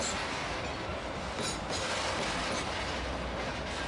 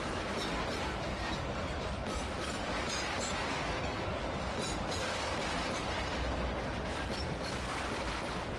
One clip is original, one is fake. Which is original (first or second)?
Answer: first